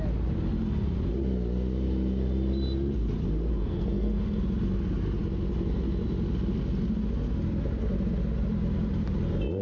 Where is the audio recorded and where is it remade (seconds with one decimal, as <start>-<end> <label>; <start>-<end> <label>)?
0.0-3.5 recorded; 3.5-4.4 remade; 4.4-9.6 recorded